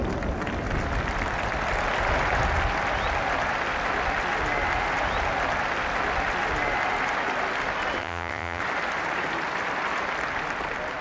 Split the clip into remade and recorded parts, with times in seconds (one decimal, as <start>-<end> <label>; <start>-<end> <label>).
0.0-8.0 recorded; 8.0-8.6 remade; 8.6-11.0 recorded